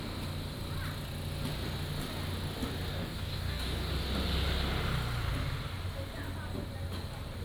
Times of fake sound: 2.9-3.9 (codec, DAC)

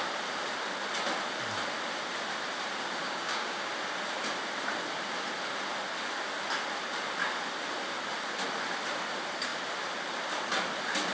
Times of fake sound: 3.0-3.7 (codec, DAC)